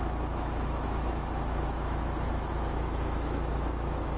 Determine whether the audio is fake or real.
fake